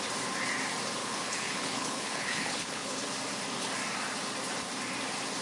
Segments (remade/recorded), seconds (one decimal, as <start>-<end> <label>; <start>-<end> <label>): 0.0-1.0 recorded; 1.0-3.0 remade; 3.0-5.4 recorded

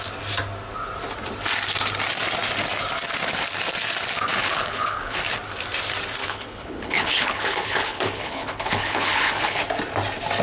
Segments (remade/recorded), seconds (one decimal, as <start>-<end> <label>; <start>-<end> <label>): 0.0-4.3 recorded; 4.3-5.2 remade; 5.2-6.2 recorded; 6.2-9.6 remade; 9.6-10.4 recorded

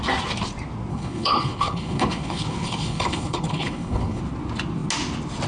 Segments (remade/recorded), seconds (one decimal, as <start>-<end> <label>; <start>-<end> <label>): 0.0-0.9 recorded; 0.9-4.2 remade; 4.2-5.5 recorded

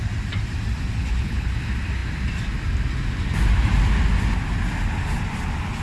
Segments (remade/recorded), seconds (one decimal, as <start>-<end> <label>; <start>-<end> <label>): 0.0-1.0 recorded; 1.0-1.5 remade; 1.5-5.8 recorded

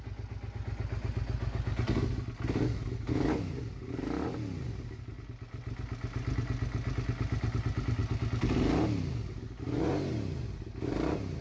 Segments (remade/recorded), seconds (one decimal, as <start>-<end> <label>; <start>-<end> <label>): 0.0-11.4 recorded